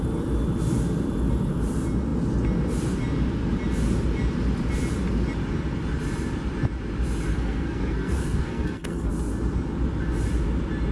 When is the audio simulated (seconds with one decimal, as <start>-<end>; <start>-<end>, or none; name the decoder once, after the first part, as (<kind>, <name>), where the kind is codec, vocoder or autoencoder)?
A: 7.3-9.1 (codec, SNAC)